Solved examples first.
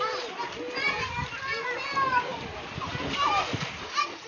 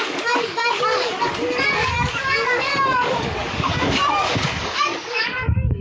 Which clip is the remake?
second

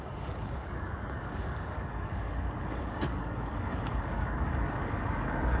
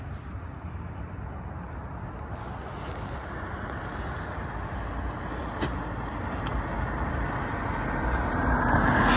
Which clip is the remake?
first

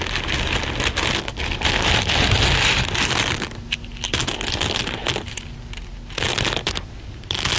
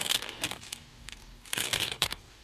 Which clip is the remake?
second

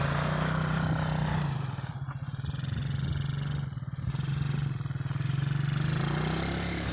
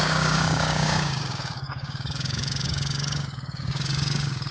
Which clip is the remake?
second